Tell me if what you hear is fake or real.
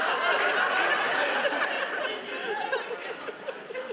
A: real